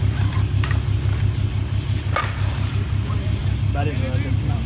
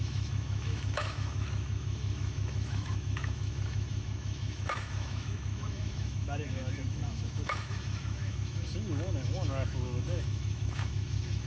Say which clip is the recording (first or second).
first